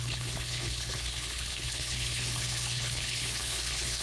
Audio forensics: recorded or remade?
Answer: remade